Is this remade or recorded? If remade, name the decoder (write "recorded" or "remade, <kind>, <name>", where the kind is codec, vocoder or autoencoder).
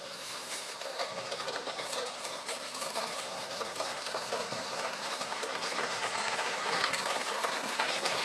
remade, codec, SNAC